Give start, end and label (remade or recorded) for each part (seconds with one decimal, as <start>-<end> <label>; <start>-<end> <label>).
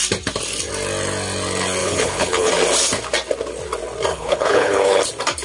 0.0-1.8 recorded; 1.8-2.5 remade; 2.5-4.1 recorded; 4.1-5.0 remade; 5.0-5.4 recorded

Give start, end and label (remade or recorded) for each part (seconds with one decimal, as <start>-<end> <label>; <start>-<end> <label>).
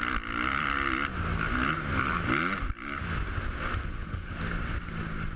0.0-3.9 recorded; 3.9-4.4 remade; 4.4-5.4 recorded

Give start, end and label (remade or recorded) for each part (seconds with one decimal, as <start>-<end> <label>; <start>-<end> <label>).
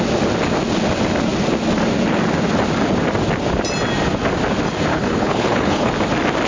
0.0-4.9 recorded; 4.9-5.9 remade; 5.9-6.5 recorded